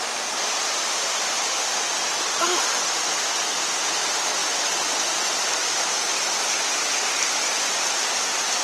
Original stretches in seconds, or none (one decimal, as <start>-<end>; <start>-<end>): 0.0-8.6